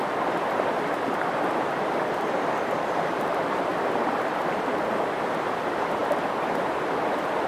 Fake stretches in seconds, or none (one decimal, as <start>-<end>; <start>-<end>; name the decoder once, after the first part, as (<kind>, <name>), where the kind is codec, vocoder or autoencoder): 0.0-3.7 (vocoder, BigVGAN v2); 4.9-6.0